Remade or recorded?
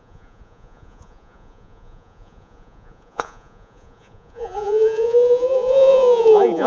remade